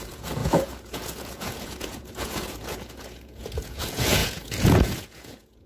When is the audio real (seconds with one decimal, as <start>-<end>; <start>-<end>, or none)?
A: none